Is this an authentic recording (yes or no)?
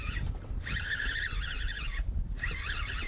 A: no